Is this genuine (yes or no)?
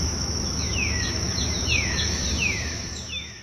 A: no